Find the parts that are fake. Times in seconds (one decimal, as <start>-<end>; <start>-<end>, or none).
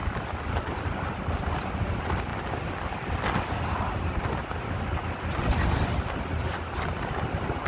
none